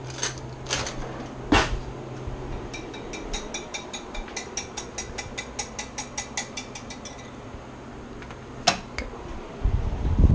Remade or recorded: recorded